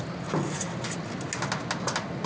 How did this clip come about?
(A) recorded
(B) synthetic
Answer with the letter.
A